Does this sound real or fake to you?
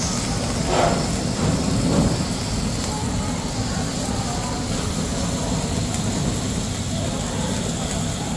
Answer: real